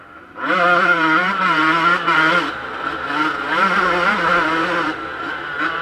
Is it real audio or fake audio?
real